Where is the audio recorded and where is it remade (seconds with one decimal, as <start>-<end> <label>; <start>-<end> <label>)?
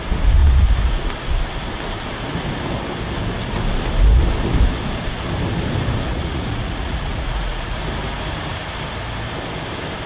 0.0-6.1 recorded; 6.1-7.8 remade; 7.8-10.1 recorded